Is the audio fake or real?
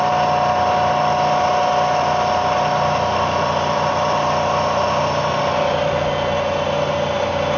real